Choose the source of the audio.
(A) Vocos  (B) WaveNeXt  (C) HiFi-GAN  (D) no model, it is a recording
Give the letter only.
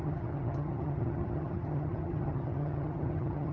C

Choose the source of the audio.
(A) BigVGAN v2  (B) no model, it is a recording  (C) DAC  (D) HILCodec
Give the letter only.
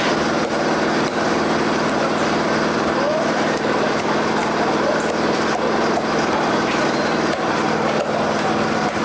A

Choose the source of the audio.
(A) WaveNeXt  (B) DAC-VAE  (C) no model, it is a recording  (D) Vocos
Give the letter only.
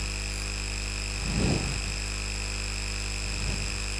C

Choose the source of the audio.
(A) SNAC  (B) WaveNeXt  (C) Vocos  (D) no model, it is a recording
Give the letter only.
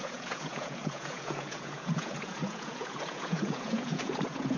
C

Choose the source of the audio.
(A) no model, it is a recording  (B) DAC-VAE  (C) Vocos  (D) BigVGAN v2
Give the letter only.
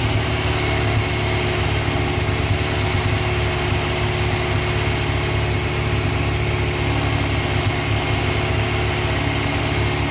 A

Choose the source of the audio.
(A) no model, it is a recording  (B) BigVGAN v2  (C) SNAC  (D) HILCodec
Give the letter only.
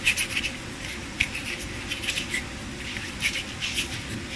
A